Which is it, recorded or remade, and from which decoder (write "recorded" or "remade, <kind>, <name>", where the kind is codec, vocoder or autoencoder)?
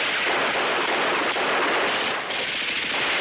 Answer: recorded